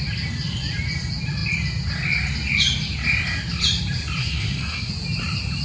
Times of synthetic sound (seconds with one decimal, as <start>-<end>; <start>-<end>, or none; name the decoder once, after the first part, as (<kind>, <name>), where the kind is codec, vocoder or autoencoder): 4.2-4.9 (codec, SNAC)